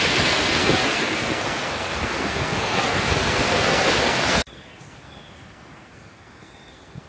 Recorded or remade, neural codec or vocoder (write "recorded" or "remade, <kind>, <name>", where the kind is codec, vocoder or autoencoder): remade, codec, SNAC